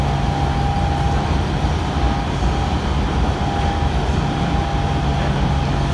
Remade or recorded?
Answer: recorded